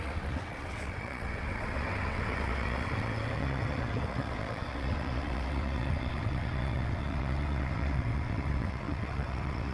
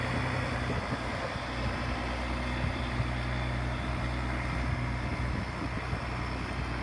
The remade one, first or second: first